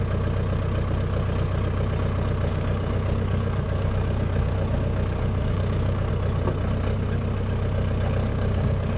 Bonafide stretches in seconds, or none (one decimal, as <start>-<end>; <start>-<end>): 0.0-2.5; 6.1-8.3

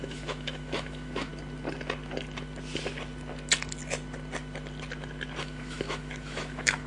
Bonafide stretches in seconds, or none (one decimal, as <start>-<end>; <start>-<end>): 1.3-5.4

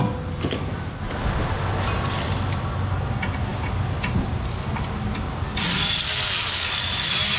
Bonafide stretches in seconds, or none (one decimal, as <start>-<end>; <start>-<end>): 0.0-7.4

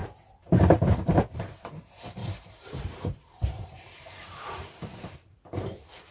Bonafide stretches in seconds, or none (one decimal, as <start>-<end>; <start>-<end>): 1.7-2.2; 4.8-6.1